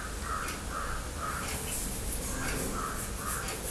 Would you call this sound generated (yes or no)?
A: no